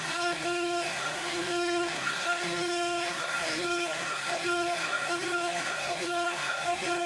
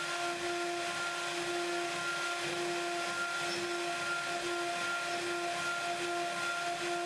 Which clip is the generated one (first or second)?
first